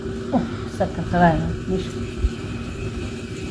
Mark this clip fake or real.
real